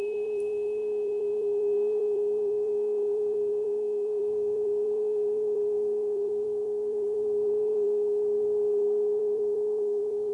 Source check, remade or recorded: remade